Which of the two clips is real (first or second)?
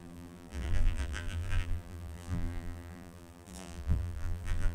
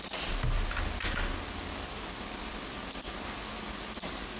second